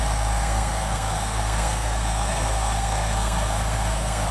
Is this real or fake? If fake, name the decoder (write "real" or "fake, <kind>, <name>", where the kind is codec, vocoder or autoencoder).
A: fake, codec, SNAC